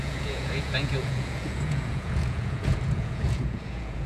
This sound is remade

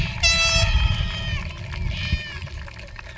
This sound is recorded